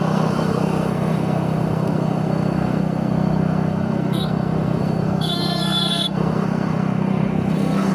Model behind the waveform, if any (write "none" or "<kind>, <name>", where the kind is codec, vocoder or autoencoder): codec, SNAC